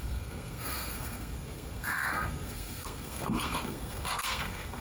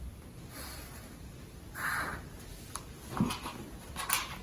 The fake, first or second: first